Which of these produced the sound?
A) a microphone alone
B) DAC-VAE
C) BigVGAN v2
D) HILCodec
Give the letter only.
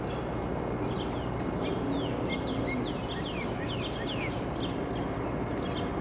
A